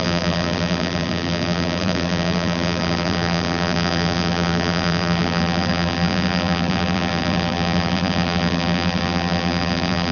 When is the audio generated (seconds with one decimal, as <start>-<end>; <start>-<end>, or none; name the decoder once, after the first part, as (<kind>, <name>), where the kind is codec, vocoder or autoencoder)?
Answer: 0.0-10.1 (vocoder, BigVGAN v2)